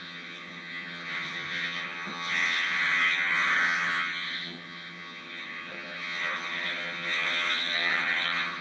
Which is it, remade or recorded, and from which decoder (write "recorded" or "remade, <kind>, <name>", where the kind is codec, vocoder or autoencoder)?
remade, vocoder, HiFi-GAN